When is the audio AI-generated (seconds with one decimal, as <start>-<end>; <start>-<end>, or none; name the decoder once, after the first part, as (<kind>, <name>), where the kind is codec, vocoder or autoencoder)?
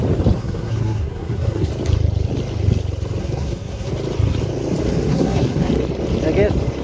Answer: 0.4-1.7 (codec, SNAC); 3.2-3.9; 5.1-5.7